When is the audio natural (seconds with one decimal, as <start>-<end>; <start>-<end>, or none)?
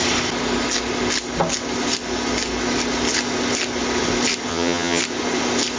0.0-4.5; 5.0-5.8